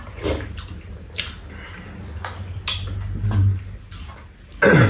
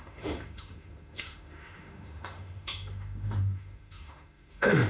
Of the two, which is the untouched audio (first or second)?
first